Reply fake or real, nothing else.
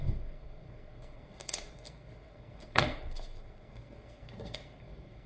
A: fake